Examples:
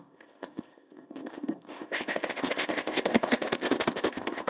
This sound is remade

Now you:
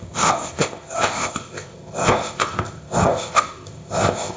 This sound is remade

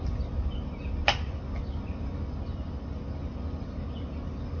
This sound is recorded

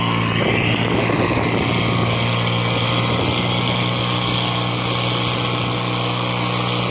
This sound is recorded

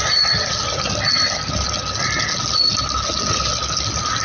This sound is recorded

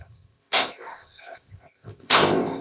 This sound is remade